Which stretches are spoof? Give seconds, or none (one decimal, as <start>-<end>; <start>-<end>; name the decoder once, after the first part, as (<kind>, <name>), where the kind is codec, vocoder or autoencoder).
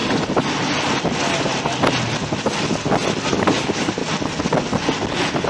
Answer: 3.3-4.0 (codec, DAC)